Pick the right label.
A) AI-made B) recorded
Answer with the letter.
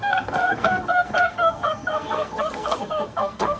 A